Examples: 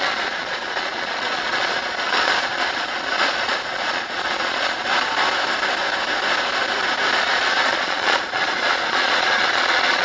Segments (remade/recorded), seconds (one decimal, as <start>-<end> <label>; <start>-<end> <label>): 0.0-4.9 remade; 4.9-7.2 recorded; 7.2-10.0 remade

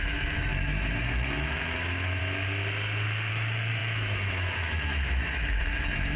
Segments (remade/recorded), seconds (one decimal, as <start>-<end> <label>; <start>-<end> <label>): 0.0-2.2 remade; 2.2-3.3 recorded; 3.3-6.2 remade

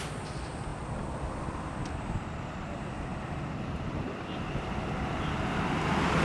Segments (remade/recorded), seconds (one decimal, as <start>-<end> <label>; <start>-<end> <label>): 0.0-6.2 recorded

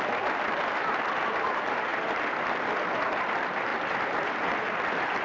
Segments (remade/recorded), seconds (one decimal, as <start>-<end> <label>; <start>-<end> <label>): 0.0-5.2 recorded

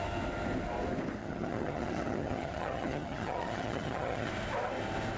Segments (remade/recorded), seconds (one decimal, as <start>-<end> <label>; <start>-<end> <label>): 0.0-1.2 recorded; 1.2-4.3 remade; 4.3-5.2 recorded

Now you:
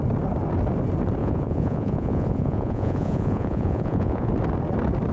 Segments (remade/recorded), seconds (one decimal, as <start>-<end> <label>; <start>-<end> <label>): 0.0-1.2 recorded; 1.2-4.3 remade; 4.3-5.1 recorded

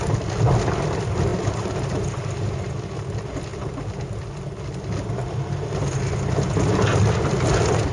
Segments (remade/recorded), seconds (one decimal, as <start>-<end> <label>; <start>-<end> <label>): 0.0-1.3 recorded; 1.3-2.3 remade; 2.3-7.9 recorded

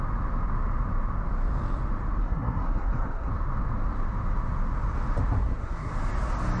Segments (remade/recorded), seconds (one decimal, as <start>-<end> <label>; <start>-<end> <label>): 0.0-2.2 recorded; 2.2-3.3 remade; 3.3-5.4 recorded; 5.4-5.9 remade; 5.9-6.6 recorded